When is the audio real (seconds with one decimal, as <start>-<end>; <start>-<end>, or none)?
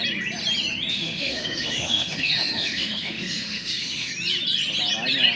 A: 0.0-0.9; 4.1-5.4